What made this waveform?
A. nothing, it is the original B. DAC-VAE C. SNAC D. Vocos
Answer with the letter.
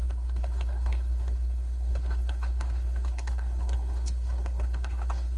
C